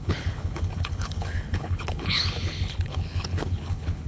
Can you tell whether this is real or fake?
fake